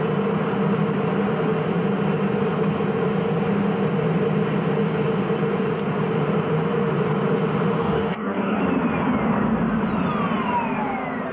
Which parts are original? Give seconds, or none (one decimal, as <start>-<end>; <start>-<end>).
0.0-7.8; 8.6-11.3